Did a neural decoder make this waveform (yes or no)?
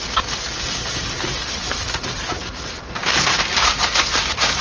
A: no